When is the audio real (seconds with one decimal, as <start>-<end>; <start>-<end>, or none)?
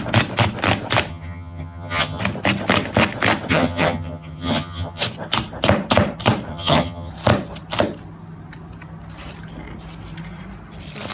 0.0-1.1; 2.2-3.5; 5.0-6.5; 7.1-11.1